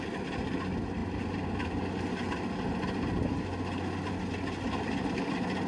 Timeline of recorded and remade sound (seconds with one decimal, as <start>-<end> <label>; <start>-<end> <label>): 0.0-5.7 recorded